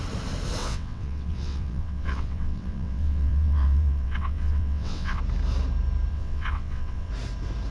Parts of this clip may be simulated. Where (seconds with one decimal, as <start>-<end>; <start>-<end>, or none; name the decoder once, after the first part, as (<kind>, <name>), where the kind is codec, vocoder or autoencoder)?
0.6-5.2 (vocoder, WaveNeXt); 6.1-7.1